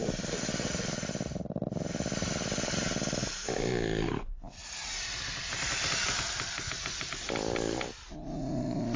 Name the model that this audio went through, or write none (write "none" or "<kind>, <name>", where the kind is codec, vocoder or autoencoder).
none